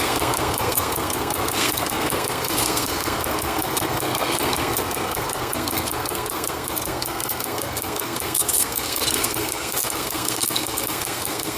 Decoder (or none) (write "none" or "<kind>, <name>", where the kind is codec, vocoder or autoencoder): codec, SNAC